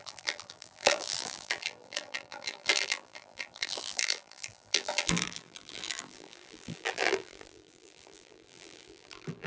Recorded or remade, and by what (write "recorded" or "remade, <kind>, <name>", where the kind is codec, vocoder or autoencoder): remade, vocoder, BigVGAN v2